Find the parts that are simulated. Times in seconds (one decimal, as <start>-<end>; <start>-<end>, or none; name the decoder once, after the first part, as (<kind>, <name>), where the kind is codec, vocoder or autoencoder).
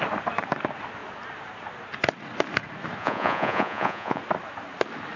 3.0-4.2 (vocoder, Vocos)